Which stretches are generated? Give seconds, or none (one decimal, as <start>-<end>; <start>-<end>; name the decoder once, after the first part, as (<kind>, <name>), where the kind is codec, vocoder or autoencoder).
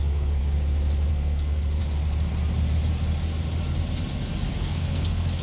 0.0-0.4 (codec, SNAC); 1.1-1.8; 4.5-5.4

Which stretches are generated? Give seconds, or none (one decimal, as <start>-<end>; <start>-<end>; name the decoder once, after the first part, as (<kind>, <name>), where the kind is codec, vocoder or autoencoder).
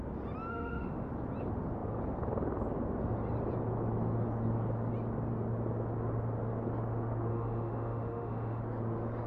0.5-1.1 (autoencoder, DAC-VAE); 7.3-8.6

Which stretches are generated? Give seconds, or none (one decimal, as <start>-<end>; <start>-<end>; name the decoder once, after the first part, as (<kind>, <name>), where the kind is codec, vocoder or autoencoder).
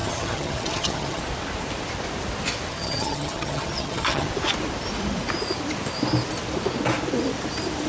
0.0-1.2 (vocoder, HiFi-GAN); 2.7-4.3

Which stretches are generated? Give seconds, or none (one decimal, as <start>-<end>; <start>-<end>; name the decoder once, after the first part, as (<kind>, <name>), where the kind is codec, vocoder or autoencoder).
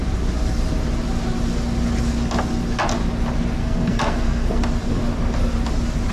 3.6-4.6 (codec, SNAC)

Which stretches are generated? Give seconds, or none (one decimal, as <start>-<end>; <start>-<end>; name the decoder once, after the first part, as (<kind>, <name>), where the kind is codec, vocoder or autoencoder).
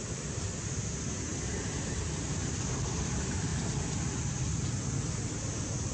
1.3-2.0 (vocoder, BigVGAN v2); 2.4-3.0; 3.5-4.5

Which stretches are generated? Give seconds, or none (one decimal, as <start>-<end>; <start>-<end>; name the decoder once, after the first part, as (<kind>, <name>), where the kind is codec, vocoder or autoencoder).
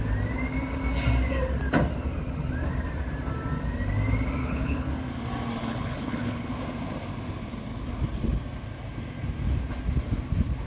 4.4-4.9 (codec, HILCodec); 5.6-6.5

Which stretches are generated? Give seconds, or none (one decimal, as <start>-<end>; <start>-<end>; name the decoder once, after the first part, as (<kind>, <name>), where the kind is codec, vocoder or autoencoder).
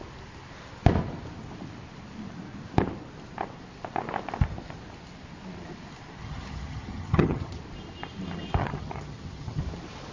6.2-7.6 (vocoder, HiFi-GAN); 8.6-9.6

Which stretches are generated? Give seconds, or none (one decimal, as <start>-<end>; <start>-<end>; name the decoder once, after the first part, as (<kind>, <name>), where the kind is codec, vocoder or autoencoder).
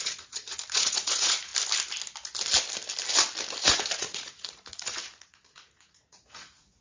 0.0-1.5 (vocoder, Vocos); 3.6-6.8